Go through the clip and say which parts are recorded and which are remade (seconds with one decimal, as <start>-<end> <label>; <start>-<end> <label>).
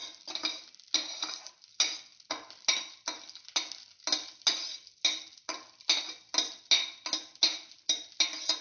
0.0-8.6 recorded